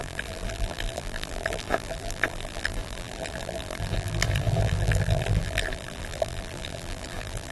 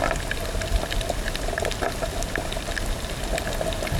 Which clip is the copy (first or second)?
first